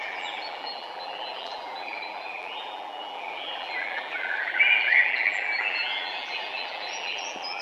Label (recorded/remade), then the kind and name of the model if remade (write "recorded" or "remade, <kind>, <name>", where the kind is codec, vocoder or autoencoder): remade, vocoder, BigVGAN v2